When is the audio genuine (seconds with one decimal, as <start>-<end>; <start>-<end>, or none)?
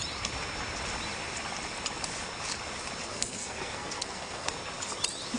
0.0-3.1; 4.5-5.4